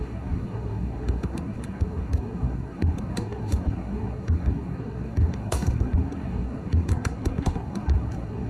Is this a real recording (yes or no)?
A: no